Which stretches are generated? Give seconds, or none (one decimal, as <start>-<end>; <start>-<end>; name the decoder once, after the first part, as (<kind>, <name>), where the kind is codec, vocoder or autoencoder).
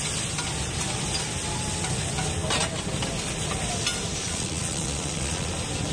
4.2-5.5 (vocoder, Vocos)